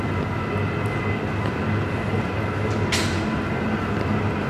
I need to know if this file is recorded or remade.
recorded